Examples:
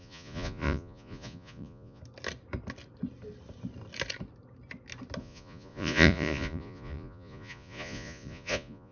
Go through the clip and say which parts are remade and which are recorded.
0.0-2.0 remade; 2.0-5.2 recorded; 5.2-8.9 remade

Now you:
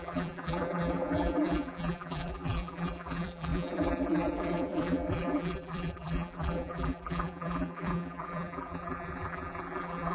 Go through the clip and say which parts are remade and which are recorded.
0.0-10.1 remade

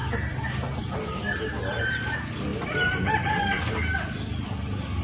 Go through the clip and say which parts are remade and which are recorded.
0.0-5.0 recorded

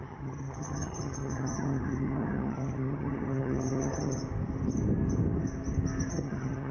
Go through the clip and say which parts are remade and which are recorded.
0.0-4.2 remade; 4.2-6.1 recorded; 6.1-6.7 remade

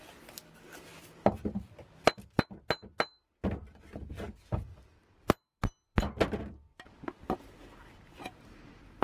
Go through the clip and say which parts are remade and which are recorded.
0.0-9.0 recorded

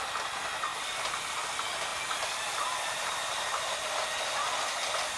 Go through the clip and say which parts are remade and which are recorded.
0.0-0.7 recorded; 0.7-1.4 remade; 1.4-1.9 recorded; 1.9-3.7 remade; 3.7-5.2 recorded

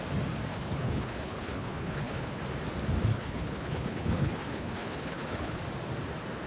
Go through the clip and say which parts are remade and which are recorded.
0.0-0.5 recorded; 0.5-2.4 remade; 2.4-3.1 recorded; 3.1-5.6 remade; 5.6-6.5 recorded

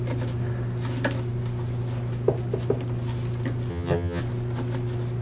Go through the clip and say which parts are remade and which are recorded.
0.0-3.7 recorded; 3.7-4.2 remade; 4.2-5.2 recorded